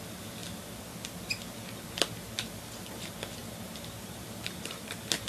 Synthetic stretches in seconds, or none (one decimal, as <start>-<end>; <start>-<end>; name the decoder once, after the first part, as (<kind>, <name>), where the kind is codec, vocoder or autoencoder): 3.4-5.3 (vocoder, BigVGAN v2)